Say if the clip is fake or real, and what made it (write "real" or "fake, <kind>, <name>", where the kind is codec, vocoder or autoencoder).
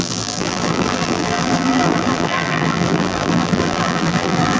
fake, vocoder, BigVGAN v2